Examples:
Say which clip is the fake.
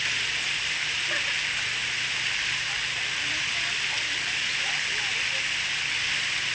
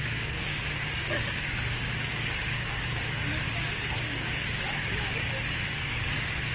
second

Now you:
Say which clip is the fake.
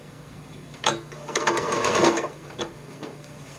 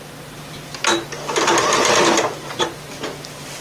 first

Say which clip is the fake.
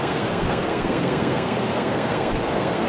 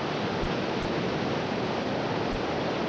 first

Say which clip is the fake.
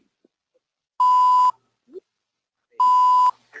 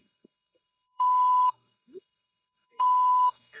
second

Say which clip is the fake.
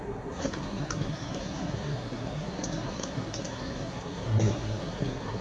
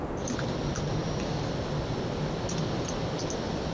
first